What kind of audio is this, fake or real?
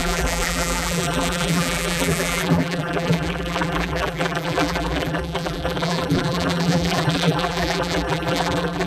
fake